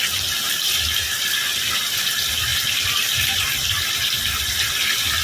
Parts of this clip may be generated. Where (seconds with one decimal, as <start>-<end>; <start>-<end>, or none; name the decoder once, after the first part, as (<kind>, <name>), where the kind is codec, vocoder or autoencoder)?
0.0-5.2 (vocoder, BigVGAN v2)